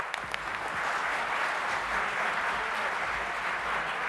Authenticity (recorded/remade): recorded